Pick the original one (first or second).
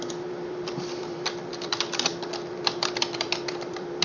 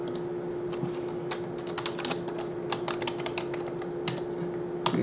second